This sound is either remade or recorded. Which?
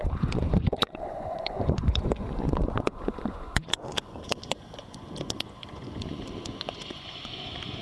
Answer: remade